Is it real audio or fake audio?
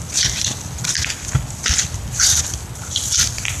real